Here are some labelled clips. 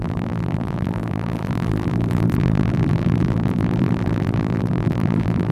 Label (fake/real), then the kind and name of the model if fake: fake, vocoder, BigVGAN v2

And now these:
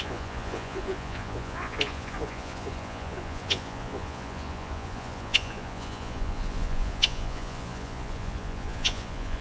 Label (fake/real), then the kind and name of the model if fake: fake, vocoder, Vocos